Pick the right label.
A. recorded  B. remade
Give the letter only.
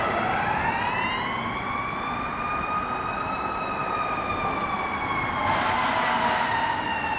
A